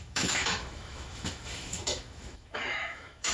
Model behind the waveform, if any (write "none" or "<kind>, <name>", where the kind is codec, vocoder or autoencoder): autoencoder, DAC-VAE